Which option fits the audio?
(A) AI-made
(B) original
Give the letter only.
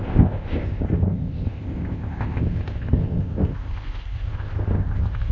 A